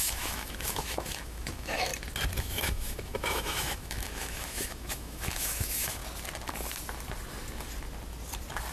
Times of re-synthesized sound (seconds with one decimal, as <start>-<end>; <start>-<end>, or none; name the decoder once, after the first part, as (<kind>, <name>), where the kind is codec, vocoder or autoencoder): 0.0-1.9 (autoencoder, DAC-VAE); 2.4-6.0